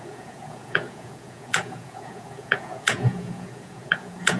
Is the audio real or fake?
fake